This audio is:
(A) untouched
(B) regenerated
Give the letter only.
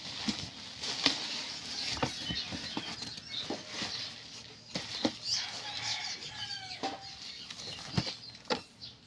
A